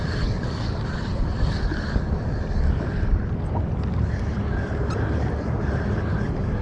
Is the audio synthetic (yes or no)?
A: no